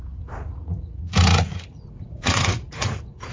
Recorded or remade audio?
remade